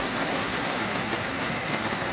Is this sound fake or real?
fake